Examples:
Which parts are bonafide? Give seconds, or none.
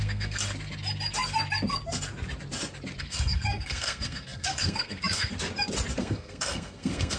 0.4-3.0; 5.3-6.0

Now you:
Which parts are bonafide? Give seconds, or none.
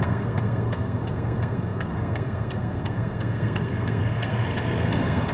none